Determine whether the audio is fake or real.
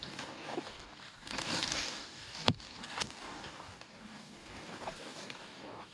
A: fake